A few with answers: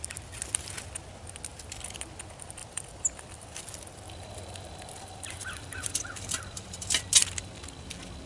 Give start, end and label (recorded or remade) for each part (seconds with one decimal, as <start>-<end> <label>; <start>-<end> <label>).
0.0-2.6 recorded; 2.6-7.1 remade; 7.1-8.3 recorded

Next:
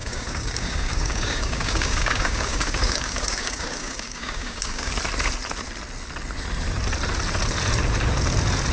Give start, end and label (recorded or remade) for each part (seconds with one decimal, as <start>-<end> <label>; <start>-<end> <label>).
0.0-4.9 remade; 4.9-8.7 recorded

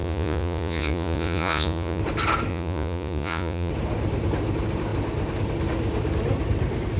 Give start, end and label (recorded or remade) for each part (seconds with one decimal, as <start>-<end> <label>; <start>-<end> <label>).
0.0-2.0 remade; 2.0-2.5 recorded; 2.5-3.7 remade; 3.7-7.0 recorded

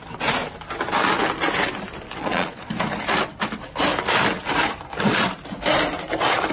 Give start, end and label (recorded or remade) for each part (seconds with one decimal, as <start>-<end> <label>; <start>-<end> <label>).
0.0-2.2 recorded; 2.2-2.7 remade; 2.7-6.5 recorded